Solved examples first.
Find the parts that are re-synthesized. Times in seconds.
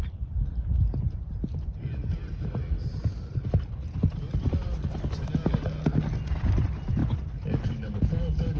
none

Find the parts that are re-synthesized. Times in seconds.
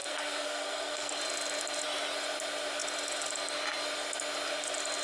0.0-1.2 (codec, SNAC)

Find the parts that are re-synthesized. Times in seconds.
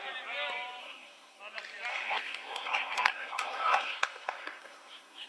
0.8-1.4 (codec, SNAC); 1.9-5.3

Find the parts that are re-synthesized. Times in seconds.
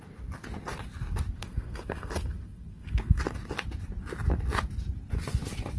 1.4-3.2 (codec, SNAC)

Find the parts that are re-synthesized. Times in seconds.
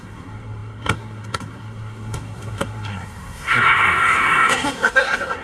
0.0-5.4 (codec, SNAC)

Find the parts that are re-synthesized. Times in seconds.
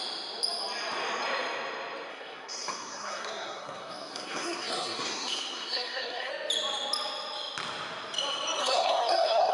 2.1-6.3 (codec, SNAC); 8.6-9.5